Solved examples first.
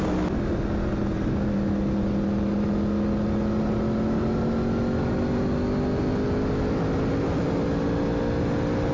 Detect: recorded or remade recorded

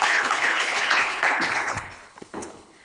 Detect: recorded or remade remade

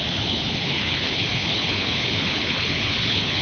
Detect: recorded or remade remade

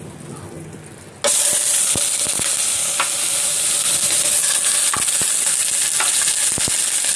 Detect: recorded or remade recorded